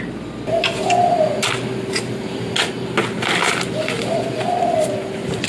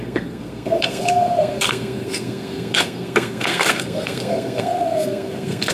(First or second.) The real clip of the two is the first